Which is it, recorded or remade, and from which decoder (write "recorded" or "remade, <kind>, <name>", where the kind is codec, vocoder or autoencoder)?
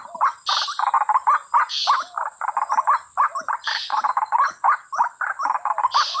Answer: recorded